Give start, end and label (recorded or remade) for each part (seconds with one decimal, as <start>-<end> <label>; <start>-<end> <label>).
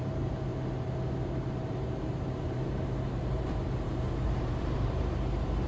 0.0-0.5 remade; 0.5-1.7 recorded; 1.7-5.7 remade